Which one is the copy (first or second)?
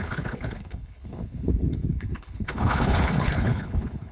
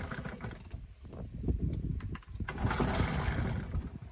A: first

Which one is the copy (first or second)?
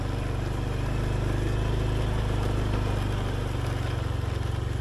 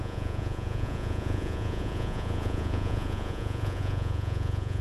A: second